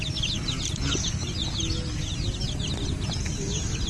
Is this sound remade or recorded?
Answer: recorded